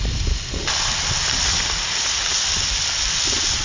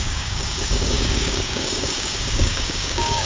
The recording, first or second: first